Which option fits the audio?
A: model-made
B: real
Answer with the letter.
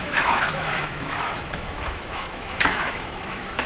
A